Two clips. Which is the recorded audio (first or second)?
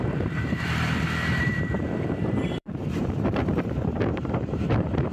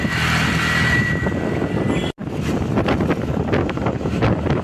second